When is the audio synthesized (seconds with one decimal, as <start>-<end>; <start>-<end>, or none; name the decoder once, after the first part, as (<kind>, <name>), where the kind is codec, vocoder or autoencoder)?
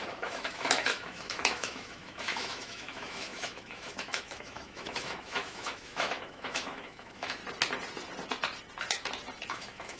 0.0-7.4 (autoencoder, DAC-VAE); 9.5-10.0